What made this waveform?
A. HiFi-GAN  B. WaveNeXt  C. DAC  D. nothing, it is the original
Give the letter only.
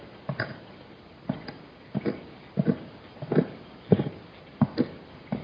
D